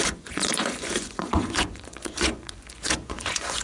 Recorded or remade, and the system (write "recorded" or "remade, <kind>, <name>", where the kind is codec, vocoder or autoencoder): remade, vocoder, Vocos